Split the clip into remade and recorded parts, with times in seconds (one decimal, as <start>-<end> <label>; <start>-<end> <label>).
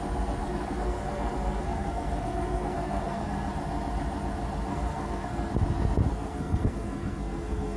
0.0-0.4 recorded; 0.4-3.5 remade; 3.5-4.7 recorded; 4.7-5.5 remade; 5.5-6.1 recorded; 6.1-7.8 remade